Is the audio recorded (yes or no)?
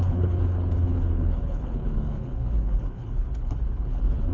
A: no